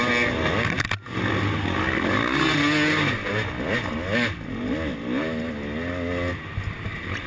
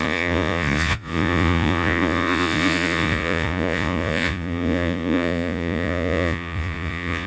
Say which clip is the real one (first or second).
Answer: first